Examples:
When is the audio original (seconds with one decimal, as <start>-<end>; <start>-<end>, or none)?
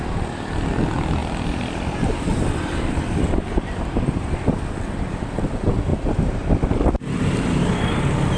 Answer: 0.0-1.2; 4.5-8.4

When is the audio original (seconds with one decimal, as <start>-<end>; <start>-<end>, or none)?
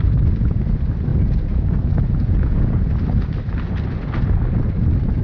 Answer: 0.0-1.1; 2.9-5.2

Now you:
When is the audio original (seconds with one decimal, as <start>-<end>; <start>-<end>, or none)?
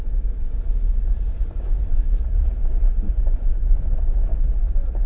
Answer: 0.0-2.9; 3.9-5.1